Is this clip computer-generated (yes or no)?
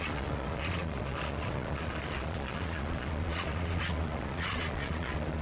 yes